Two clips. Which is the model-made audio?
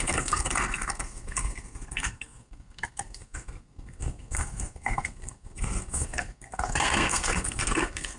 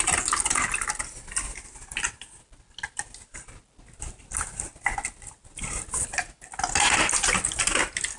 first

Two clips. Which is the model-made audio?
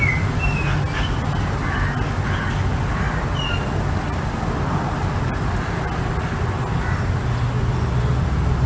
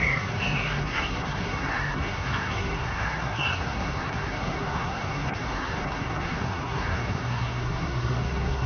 second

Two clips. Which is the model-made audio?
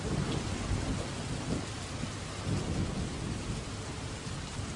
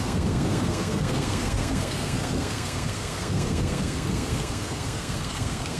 second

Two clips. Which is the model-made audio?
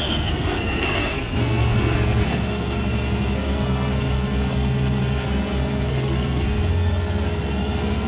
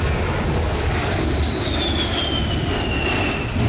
first